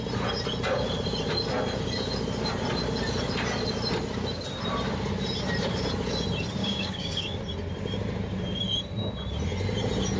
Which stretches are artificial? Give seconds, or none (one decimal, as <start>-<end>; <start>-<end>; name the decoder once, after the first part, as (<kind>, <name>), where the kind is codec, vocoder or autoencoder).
6.6-7.4 (codec, DAC)